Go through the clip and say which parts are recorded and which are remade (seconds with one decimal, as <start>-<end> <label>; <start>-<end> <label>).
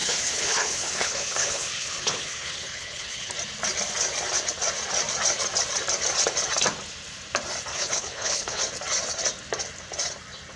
0.0-3.3 remade; 3.3-7.7 recorded; 7.7-8.6 remade; 8.6-10.6 recorded